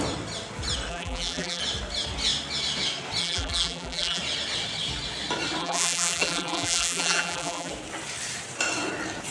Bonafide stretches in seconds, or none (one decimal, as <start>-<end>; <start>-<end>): 0.0-0.9; 1.6-3.2; 4.2-5.6; 7.7-9.3